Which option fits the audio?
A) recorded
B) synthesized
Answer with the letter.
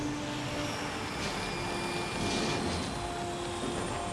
A